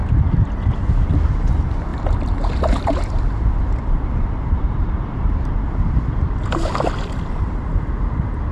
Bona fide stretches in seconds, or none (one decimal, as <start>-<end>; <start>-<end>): 0.0-1.9; 5.5-8.5